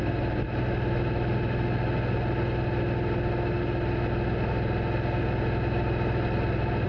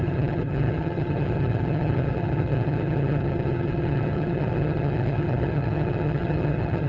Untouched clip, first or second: first